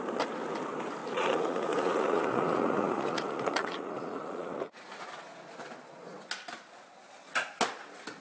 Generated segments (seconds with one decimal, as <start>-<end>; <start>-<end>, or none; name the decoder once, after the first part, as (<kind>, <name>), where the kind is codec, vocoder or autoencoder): 1.0-5.0 (vocoder, Vocos)